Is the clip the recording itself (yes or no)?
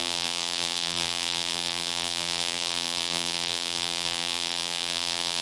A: no